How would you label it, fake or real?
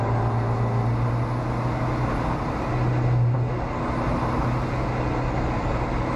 real